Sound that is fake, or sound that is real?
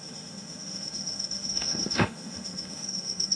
fake